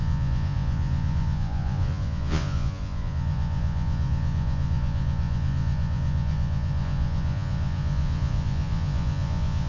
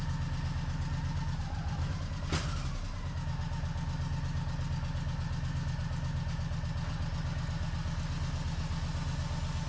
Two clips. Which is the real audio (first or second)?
second